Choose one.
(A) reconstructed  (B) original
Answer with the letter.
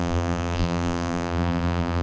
A